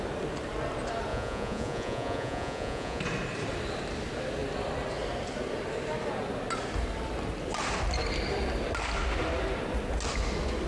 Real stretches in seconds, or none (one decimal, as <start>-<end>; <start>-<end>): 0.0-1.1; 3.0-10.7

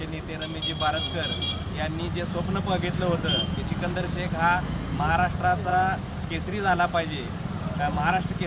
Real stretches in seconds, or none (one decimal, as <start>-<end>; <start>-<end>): 0.0-8.5

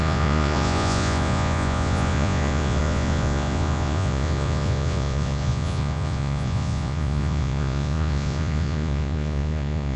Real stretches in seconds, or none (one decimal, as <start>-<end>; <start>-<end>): none